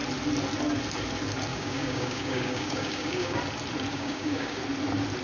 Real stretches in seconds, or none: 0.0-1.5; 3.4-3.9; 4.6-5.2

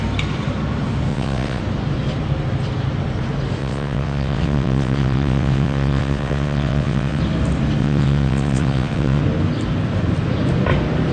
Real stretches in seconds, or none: 0.0-1.1; 1.6-3.6; 7.2-7.8; 9.2-11.1

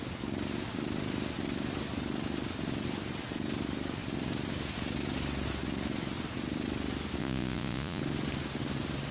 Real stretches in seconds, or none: 0.0-7.2; 8.0-9.1

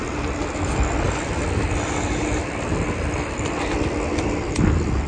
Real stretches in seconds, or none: 0.0-5.1

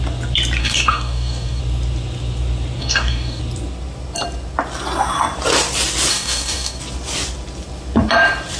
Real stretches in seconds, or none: 0.0-0.6; 1.6-2.8; 3.4-6.1; 6.8-8.6

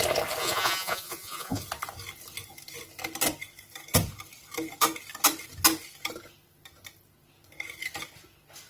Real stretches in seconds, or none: 0.0-0.4; 1.6-8.7

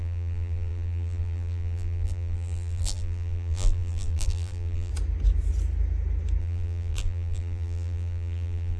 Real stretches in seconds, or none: 4.9-6.4

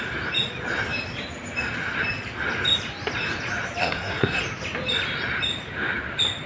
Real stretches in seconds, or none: 0.0-3.8; 4.4-6.5